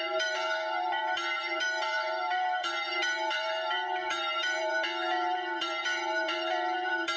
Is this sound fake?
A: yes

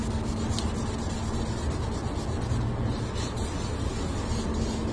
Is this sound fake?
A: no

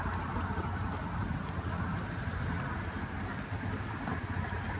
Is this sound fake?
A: no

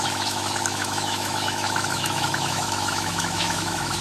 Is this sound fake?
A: yes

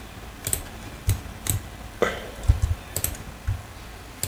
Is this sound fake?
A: no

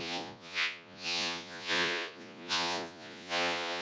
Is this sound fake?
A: yes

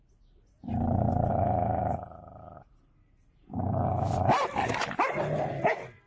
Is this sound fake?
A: no